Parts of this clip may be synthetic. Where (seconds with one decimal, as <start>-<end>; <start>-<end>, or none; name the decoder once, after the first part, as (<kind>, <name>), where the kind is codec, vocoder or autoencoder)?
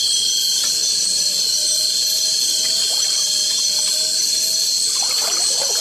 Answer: none